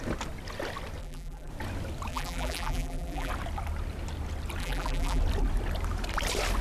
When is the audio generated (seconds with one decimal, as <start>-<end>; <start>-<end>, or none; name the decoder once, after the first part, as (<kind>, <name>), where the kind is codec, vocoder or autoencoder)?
1.0-1.5 (vocoder, BigVGAN v2); 2.1-3.3; 4.6-5.2